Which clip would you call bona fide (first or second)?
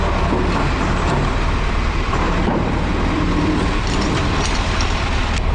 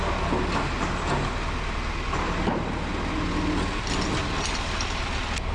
second